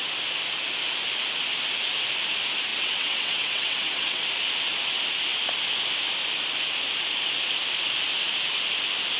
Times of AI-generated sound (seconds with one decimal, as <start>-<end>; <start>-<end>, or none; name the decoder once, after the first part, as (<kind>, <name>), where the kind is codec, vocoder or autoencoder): 2.7-4.2 (vocoder, WaveNeXt)

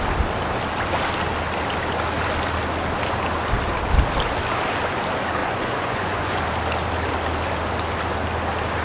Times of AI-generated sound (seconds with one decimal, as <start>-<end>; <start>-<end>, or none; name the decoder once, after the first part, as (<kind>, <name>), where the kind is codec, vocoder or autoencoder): 5.4-6.4 (vocoder, Vocos)